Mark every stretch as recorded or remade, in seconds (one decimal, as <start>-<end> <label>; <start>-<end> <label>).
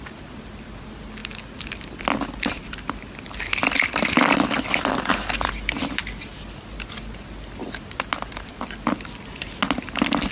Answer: 0.0-10.3 recorded